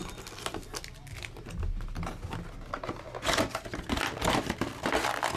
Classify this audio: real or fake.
real